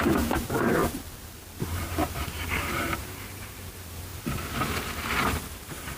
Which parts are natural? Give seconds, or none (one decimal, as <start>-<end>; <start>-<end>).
0.8-1.6; 2.0-2.6; 4.1-5.5